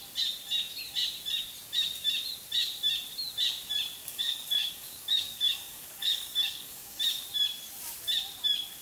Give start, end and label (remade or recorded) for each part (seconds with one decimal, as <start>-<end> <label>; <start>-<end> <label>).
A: 0.0-4.0 recorded; 4.0-7.0 remade; 7.0-8.8 recorded